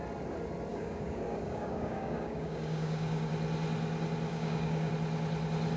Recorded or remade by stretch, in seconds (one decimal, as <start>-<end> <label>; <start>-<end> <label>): 0.0-0.7 recorded; 0.7-3.3 remade; 3.3-4.3 recorded; 4.3-4.9 remade; 4.9-5.8 recorded